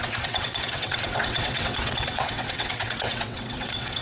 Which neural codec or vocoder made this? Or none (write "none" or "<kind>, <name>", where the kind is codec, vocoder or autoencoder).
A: vocoder, WaveNeXt